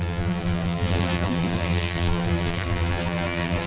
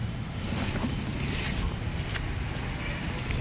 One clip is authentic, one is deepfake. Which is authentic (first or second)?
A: second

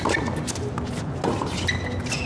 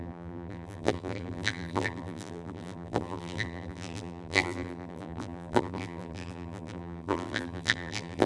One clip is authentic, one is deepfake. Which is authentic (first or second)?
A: first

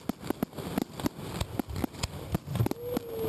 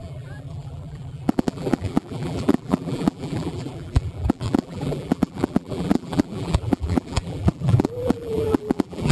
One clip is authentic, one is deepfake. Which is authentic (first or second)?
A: first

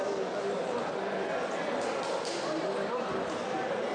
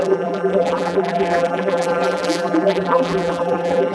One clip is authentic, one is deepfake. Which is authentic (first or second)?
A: first